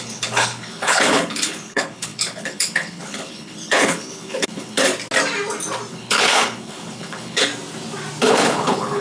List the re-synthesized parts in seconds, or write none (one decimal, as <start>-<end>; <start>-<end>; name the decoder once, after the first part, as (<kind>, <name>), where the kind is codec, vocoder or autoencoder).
0.0-4.9 (codec, HILCodec); 5.9-7.5; 8.2-9.0